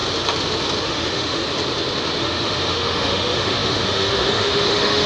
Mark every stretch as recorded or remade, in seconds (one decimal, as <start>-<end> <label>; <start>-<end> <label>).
0.0-0.8 recorded; 0.8-1.4 remade; 1.4-2.2 recorded; 2.2-5.1 remade